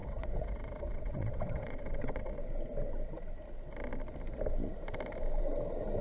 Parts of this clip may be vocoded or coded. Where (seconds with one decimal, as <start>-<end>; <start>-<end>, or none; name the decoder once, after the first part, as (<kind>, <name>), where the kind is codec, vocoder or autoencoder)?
0.0-2.3 (vocoder, WaveNeXt)